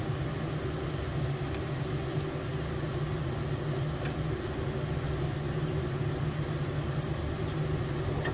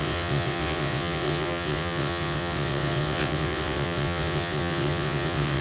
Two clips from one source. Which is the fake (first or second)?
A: second